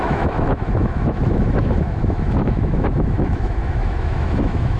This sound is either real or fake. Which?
fake